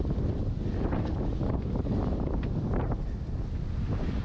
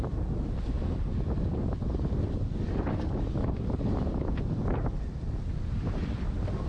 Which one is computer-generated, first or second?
second